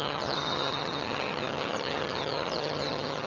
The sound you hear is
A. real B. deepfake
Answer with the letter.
B